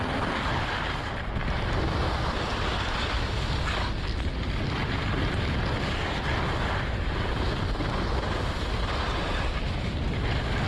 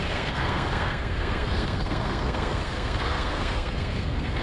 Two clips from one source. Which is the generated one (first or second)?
second